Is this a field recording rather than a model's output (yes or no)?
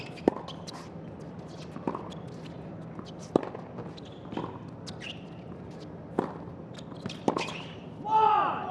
yes